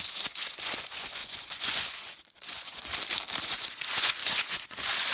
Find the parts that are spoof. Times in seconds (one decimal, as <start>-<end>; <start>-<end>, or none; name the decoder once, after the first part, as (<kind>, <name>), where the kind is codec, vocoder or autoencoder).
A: 0.0-2.9 (vocoder, Vocos); 3.4-5.1